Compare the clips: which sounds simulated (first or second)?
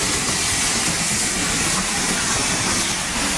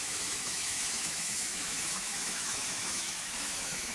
second